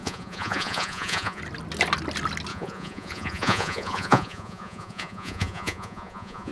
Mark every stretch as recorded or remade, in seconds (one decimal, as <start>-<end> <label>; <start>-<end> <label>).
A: 0.0-1.4 remade; 1.4-2.5 recorded; 2.5-6.5 remade

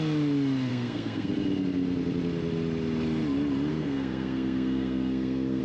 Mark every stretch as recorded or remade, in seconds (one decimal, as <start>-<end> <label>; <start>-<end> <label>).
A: 0.0-0.7 recorded; 0.7-1.3 remade; 1.3-3.7 recorded; 3.7-5.6 remade

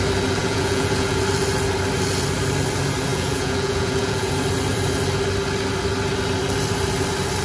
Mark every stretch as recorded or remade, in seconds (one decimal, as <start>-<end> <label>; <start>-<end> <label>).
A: 0.0-0.4 recorded; 0.4-1.2 remade; 1.2-3.1 recorded; 3.1-4.3 remade; 4.3-7.4 recorded

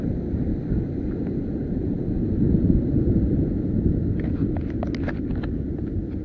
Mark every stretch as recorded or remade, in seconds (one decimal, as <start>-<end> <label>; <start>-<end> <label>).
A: 0.0-0.5 recorded; 0.5-4.1 remade; 4.1-6.2 recorded

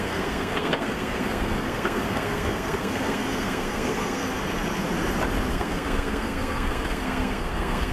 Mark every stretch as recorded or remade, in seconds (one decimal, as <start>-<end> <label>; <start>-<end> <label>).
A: 0.0-4.2 remade; 4.2-5.5 recorded; 5.5-7.9 remade